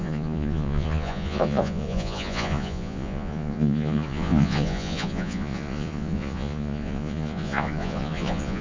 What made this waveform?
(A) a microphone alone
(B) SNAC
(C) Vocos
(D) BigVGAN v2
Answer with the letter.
C